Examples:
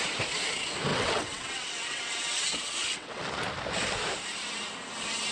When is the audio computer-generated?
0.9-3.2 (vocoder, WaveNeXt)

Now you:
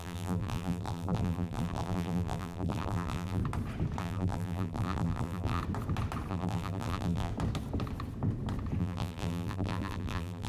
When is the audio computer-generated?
0.0-3.4 (vocoder, BigVGAN v2); 4.0-5.6; 6.3-7.3; 8.8-10.5

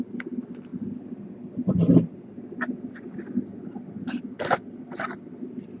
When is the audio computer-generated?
none

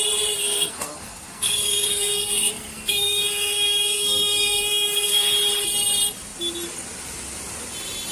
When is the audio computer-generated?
0.4-5.3 (codec, SNAC)

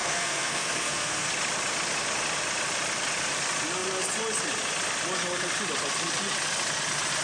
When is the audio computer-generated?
0.0-1.3 (codec, SNAC)

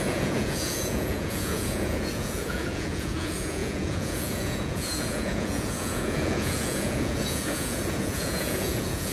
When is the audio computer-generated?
0.0-9.1 (vocoder, Vocos)

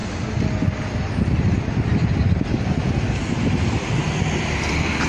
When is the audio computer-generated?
none

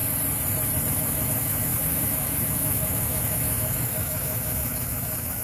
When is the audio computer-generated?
0.9-5.4 (autoencoder, DAC-VAE)